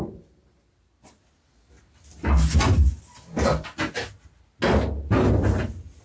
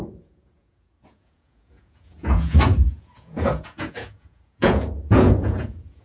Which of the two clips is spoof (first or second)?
second